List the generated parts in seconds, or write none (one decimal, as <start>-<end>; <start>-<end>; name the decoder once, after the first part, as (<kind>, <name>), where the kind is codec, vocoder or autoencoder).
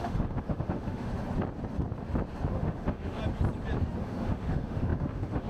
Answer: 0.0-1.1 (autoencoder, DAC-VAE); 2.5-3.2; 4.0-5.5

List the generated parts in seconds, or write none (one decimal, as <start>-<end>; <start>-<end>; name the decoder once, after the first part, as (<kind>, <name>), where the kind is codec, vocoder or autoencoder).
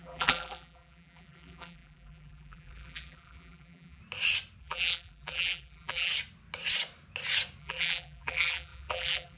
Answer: 0.0-4.0 (vocoder, BigVGAN v2); 4.6-6.1; 7.6-9.4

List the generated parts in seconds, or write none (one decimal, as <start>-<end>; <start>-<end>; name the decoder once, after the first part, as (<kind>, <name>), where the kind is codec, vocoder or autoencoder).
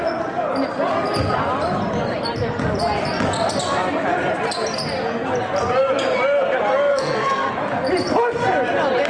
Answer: 6.9-7.5 (codec, SNAC)